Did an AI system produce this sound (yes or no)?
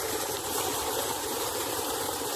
yes